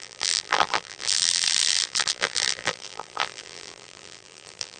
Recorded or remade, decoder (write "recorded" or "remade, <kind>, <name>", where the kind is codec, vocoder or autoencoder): remade, vocoder, BigVGAN v2